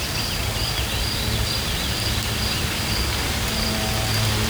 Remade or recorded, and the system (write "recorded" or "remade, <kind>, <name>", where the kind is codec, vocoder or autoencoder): remade, vocoder, BigVGAN v2